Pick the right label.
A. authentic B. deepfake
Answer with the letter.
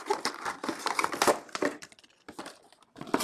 B